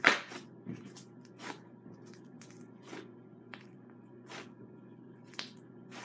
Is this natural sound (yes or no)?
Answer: no